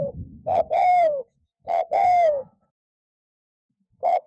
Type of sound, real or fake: fake